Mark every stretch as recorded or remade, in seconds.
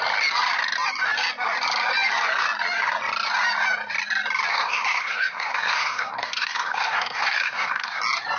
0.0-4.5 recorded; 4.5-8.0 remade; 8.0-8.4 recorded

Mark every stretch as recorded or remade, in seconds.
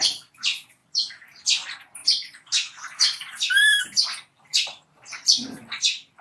0.0-2.0 recorded; 2.0-3.8 remade; 3.8-4.5 recorded; 4.5-5.2 remade; 5.2-6.2 recorded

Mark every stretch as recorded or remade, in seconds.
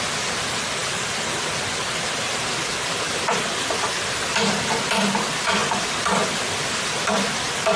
0.0-7.8 remade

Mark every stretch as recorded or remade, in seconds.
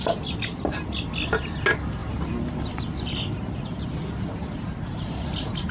0.0-5.7 recorded